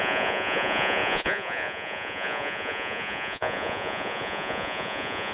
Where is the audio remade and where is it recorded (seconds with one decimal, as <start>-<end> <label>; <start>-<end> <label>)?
0.0-5.3 remade